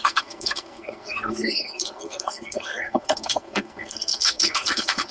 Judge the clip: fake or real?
fake